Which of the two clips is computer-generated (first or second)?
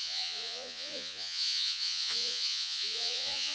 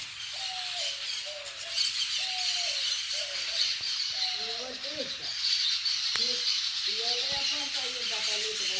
first